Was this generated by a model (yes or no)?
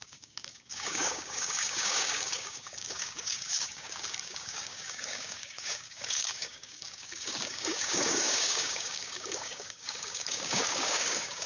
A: yes